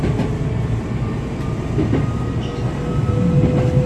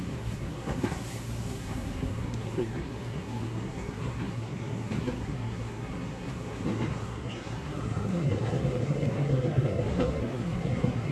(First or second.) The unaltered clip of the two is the first